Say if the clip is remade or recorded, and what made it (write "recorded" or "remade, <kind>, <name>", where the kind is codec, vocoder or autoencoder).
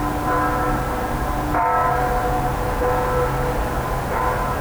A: recorded